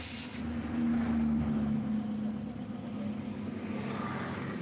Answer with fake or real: real